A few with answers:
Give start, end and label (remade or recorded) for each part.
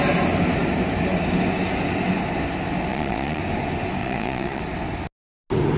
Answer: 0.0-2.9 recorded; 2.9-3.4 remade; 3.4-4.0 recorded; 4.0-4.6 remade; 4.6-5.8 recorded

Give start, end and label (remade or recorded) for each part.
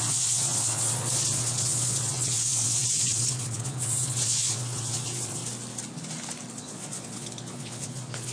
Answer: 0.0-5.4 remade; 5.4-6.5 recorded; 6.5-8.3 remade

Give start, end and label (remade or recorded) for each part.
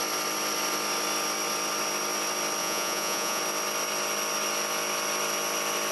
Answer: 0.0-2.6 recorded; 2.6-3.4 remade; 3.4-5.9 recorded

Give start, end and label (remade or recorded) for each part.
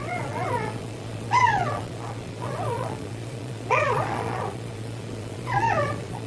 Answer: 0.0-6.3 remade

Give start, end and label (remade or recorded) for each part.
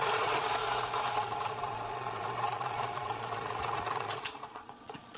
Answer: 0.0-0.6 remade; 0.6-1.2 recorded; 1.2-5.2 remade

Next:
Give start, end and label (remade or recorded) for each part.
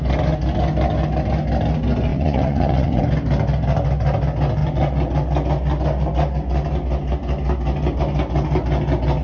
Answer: 0.0-2.1 recorded; 2.1-3.0 remade; 3.0-9.2 recorded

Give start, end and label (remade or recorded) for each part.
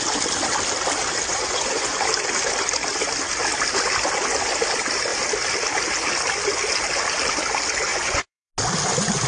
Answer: 0.0-1.3 recorded; 1.3-2.0 remade; 2.0-7.9 recorded; 7.9-8.5 remade; 8.5-9.3 recorded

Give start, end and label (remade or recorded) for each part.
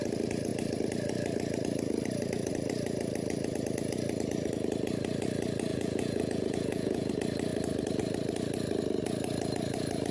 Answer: 0.0-5.7 recorded; 5.7-7.1 remade; 7.1-10.1 recorded